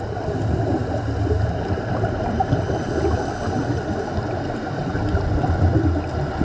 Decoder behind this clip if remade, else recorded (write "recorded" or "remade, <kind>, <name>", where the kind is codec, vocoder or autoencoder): recorded